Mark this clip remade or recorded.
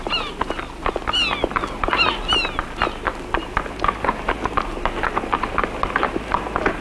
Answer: recorded